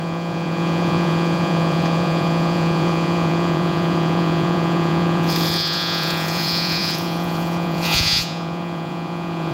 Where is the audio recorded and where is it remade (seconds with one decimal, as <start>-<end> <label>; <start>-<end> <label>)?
0.0-9.5 remade